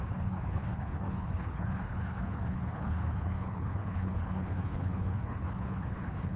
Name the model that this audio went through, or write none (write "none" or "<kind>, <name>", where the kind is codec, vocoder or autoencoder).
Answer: codec, HILCodec